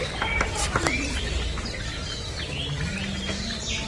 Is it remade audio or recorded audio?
recorded